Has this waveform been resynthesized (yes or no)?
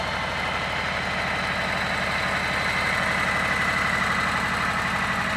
no